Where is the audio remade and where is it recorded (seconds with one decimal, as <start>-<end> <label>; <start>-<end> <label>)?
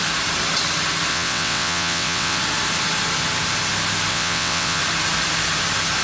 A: 0.0-1.1 recorded; 1.1-2.4 remade; 2.4-4.1 recorded; 4.1-4.8 remade; 4.8-6.0 recorded